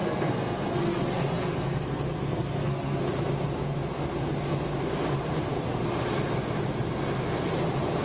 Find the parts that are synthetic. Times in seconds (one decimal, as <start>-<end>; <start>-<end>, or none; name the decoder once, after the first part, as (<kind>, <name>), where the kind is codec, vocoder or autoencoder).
0.0-3.0 (codec, SNAC)

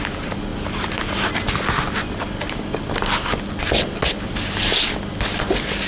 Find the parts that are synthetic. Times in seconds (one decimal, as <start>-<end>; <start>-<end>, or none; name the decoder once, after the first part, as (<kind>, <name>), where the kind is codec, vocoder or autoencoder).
none

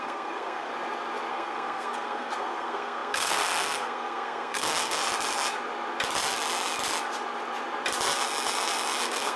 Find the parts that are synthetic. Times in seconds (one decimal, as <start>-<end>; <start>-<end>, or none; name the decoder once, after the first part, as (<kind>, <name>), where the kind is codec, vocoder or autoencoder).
0.0-0.7 (codec, SNAC); 1.3-5.0; 9.0-9.4

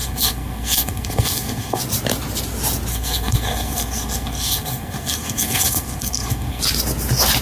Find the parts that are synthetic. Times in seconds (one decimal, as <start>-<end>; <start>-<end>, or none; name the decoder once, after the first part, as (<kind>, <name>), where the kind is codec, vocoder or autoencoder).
0.0-1.8 (codec, SNAC); 2.9-6.6